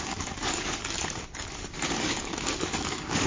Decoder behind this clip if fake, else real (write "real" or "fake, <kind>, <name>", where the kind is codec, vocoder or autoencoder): fake, codec, DAC